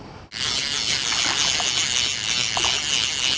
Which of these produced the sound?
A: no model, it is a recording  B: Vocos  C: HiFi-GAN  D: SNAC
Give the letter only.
A